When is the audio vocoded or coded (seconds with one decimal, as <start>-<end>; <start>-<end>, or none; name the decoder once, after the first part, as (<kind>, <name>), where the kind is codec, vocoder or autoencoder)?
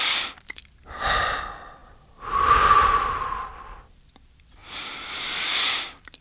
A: 1.8-4.1 (vocoder, BigVGAN v2); 4.6-5.6